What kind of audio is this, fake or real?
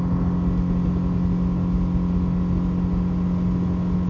real